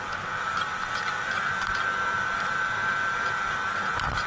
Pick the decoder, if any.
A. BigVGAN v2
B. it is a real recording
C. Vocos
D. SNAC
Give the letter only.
B